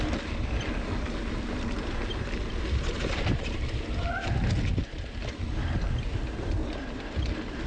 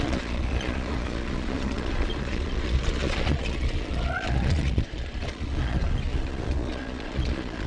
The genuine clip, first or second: first